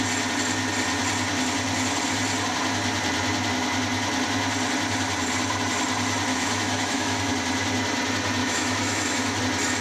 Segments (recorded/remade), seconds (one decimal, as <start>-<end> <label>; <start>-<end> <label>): 0.0-6.3 recorded; 6.3-7.3 remade; 7.3-8.4 recorded; 8.4-9.4 remade; 9.4-9.8 recorded